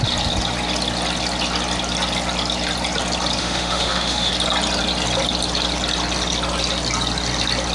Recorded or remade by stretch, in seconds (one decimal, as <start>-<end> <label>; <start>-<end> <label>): 0.0-3.4 recorded; 3.4-4.3 remade; 4.3-7.7 recorded